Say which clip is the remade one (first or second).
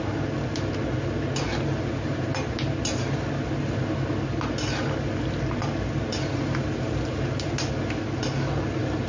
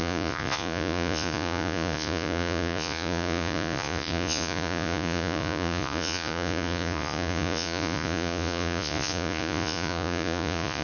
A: second